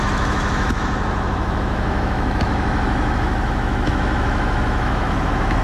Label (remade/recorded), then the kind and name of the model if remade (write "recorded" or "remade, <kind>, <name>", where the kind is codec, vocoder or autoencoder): remade, autoencoder, DAC-VAE